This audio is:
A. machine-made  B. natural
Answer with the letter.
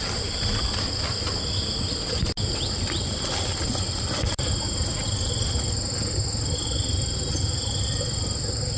B